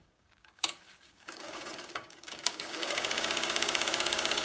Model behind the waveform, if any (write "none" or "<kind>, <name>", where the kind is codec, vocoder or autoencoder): codec, DAC